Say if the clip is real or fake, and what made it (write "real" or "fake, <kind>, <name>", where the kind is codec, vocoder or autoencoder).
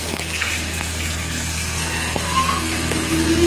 fake, codec, SNAC